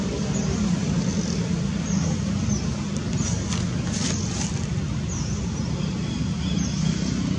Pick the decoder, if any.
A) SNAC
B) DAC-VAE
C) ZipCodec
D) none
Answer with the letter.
D